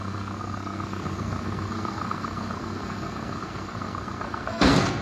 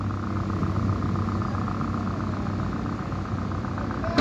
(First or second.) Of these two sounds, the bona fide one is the second